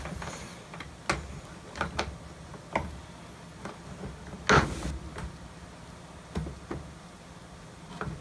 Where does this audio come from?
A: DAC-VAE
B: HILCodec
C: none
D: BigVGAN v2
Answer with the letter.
C